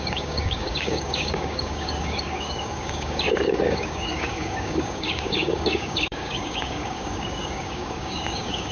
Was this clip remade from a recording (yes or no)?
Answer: yes